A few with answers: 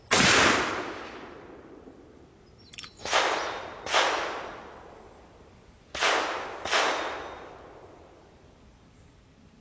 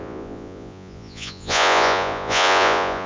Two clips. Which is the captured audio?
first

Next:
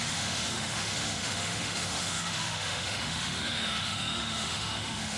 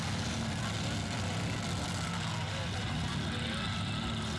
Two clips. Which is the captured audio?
second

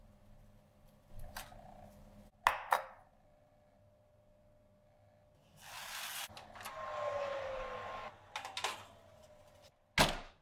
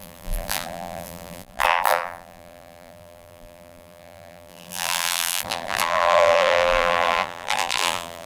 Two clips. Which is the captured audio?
first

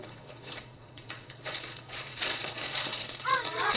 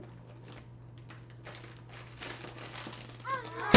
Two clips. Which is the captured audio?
second